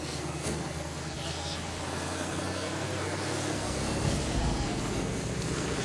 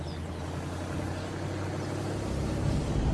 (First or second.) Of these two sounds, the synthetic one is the first